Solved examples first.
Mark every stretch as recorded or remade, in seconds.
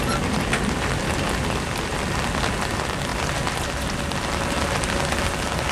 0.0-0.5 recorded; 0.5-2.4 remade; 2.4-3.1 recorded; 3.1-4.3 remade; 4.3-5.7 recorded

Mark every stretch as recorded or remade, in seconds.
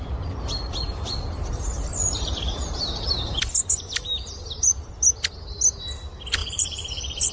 0.0-1.9 recorded; 1.9-4.9 remade; 4.9-6.4 recorded; 6.4-7.3 remade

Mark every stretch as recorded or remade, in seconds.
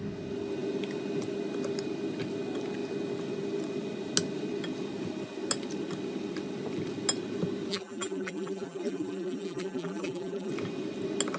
0.0-7.7 recorded; 7.7-10.5 remade; 10.5-11.4 recorded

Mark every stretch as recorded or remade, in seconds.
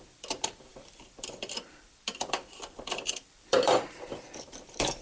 0.0-5.0 remade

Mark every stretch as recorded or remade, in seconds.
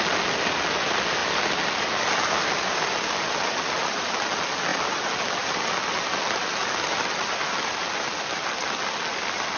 0.0-9.6 recorded